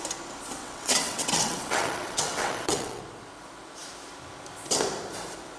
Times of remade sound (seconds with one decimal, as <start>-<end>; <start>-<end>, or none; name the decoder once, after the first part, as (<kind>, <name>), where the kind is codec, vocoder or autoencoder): 0.6-3.0 (vocoder, WaveNeXt)